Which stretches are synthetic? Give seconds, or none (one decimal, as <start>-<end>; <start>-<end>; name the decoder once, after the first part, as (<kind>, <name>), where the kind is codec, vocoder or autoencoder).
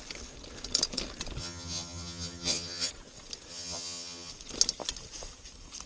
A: 1.4-2.9 (vocoder, HiFi-GAN); 3.5-4.3